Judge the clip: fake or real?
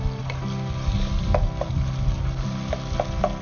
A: real